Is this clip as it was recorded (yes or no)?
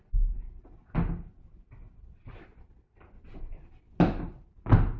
yes